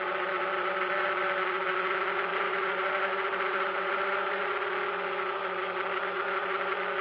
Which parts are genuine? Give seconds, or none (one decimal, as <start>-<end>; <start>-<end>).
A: 0.0-2.3; 4.4-7.0